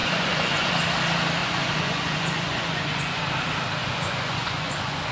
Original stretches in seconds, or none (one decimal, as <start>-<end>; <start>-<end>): 0.7-1.4; 3.2-3.8